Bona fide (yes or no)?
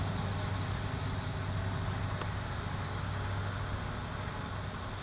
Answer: yes